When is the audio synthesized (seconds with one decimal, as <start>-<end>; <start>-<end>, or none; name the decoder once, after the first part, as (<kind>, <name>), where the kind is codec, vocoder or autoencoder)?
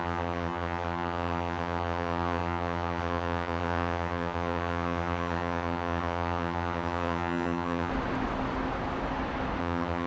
0.0-7.9 (vocoder, HiFi-GAN); 9.6-10.1